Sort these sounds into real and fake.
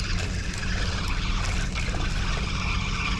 real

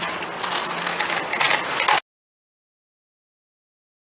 real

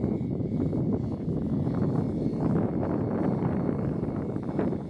real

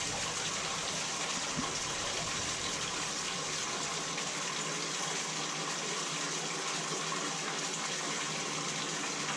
real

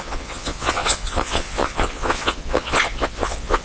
fake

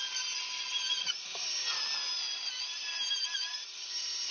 real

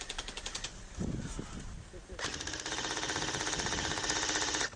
real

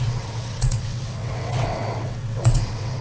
fake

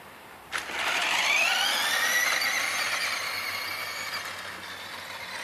real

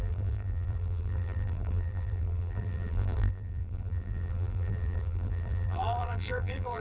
fake